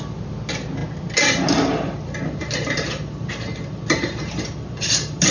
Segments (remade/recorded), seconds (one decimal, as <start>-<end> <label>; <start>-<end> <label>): 0.0-5.3 recorded